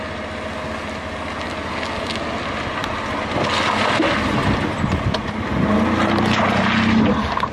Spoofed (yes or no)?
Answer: no